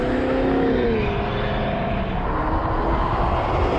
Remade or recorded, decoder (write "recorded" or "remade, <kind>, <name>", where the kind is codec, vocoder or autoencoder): recorded